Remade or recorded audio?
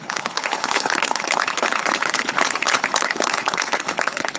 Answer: remade